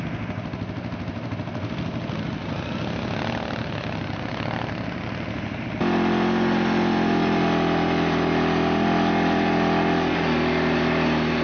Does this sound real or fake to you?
real